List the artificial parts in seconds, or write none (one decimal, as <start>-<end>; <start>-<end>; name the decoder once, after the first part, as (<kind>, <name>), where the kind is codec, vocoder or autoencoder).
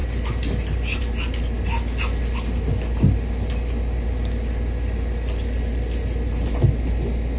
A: none